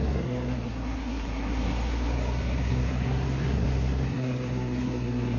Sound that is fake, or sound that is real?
fake